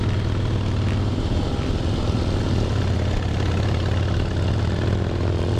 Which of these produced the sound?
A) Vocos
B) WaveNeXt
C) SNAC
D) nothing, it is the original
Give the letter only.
D